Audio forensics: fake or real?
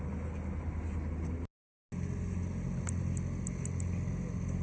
real